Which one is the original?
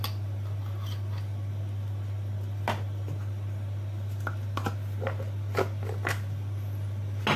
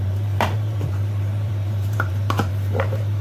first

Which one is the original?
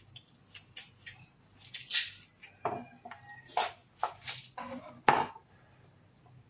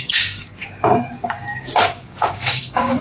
first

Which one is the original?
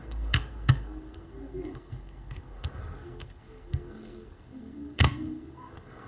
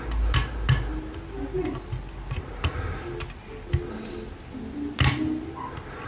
second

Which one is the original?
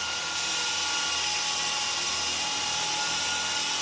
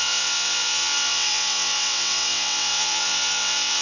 first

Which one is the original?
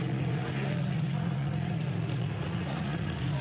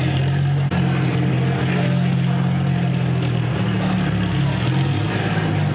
second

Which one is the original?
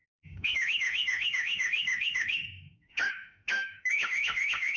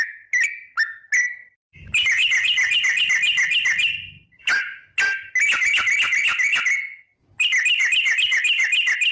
second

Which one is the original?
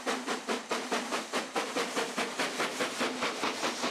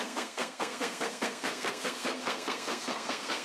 first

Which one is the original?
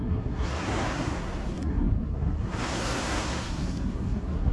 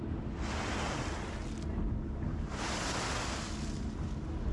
second